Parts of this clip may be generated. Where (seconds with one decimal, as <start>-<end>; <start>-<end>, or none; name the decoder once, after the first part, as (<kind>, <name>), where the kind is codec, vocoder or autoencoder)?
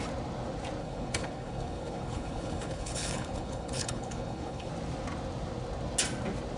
0.8-4.7 (codec, HILCodec)